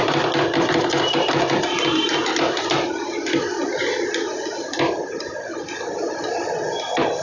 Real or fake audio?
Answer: real